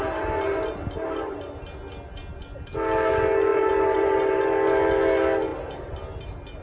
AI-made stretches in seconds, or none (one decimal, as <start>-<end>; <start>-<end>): 3.5-4.4